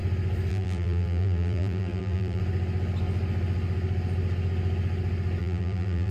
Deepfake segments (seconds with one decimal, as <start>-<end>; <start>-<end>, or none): 0.5-2.4; 5.4-6.1